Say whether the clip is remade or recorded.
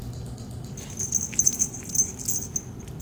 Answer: recorded